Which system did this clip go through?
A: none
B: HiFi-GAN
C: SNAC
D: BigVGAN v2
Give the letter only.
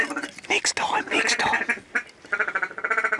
A